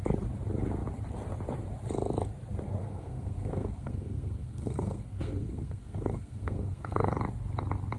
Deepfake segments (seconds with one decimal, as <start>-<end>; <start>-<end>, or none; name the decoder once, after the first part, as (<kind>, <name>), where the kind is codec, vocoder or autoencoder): 2.8-7.1 (codec, SNAC)